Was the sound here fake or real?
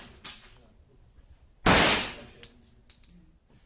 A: real